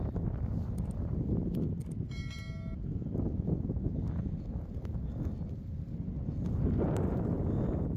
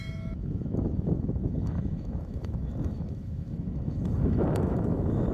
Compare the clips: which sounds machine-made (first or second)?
second